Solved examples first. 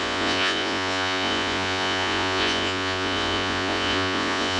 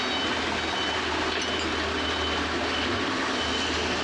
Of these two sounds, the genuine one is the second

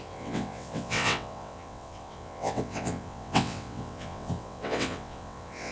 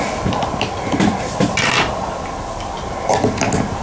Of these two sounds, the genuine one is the second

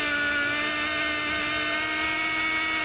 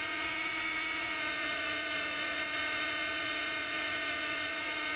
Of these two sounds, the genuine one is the first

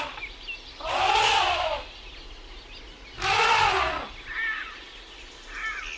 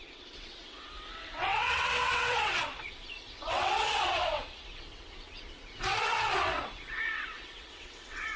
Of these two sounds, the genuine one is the first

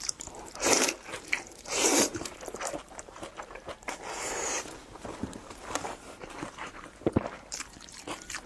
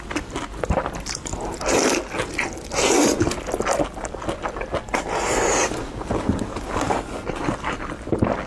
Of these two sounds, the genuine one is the second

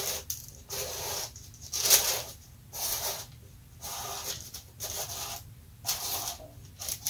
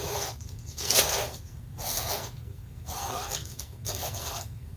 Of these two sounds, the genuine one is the first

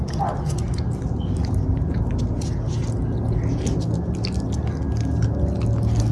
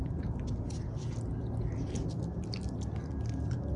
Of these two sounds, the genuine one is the first